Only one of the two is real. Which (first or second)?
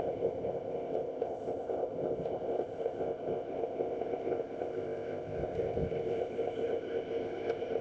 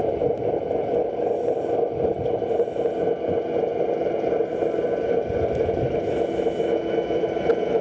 second